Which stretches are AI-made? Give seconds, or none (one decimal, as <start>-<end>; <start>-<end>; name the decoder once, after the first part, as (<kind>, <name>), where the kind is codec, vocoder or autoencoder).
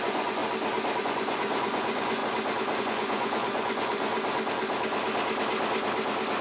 0.0-0.4 (vocoder, Vocos); 1.0-2.2; 2.8-4.1